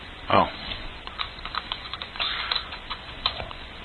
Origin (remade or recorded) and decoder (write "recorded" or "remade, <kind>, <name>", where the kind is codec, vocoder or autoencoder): remade, vocoder, Vocos